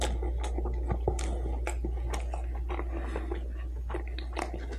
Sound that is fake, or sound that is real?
real